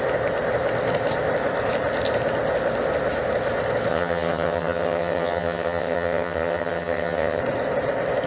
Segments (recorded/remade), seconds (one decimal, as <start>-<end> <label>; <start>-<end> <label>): 0.0-3.9 recorded; 3.9-7.4 remade; 7.4-8.3 recorded